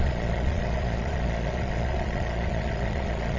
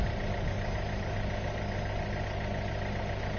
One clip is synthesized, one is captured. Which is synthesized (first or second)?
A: first